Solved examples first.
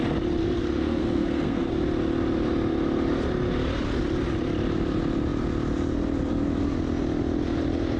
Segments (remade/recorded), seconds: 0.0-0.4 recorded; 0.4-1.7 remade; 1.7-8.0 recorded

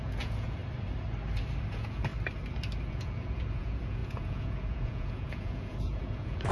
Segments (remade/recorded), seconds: 0.0-0.6 remade; 0.6-1.7 recorded; 1.7-2.1 remade; 2.1-2.9 recorded; 2.9-6.5 remade

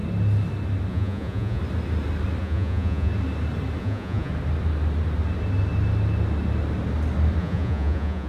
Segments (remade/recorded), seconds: 0.0-0.9 recorded; 0.9-1.6 remade; 1.6-2.4 recorded; 2.4-3.1 remade; 3.1-3.8 recorded; 3.8-4.3 remade; 4.3-7.4 recorded; 7.4-8.3 remade